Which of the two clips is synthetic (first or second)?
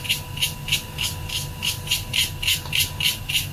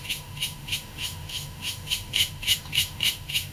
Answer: second